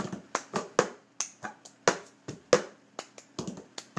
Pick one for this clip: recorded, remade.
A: recorded